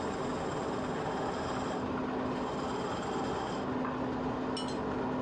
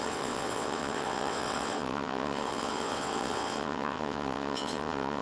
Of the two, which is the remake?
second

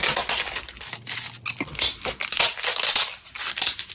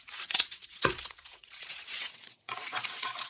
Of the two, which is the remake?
second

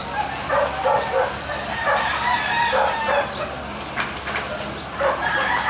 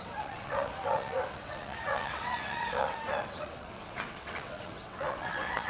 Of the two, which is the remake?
second